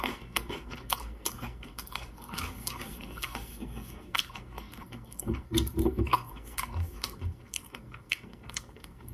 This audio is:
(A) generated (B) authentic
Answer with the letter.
A